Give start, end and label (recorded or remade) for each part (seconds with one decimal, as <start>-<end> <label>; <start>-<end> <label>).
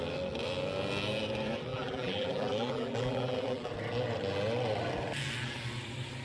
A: 0.0-1.7 recorded; 1.7-3.7 remade; 3.7-6.2 recorded